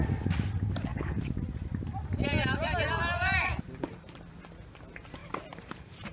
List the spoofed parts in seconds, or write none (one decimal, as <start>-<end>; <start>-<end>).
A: 0.9-4.3; 5.2-6.1